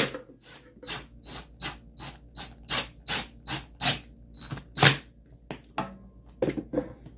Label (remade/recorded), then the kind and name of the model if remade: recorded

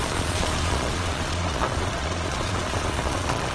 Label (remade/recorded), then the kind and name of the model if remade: remade, vocoder, Vocos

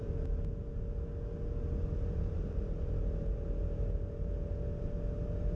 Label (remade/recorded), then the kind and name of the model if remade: recorded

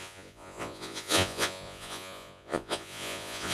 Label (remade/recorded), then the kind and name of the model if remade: remade, vocoder, Vocos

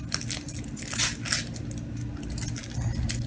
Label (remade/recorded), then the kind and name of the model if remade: recorded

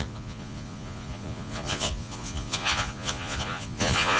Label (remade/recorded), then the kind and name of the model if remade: remade, vocoder, Vocos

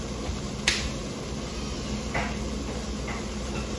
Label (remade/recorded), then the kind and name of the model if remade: recorded